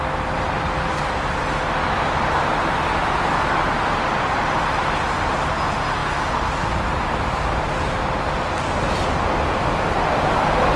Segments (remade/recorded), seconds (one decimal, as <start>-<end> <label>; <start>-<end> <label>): 0.0-10.8 recorded